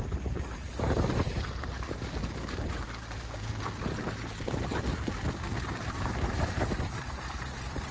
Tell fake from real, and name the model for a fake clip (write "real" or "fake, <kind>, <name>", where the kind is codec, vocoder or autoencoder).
fake, vocoder, BigVGAN v2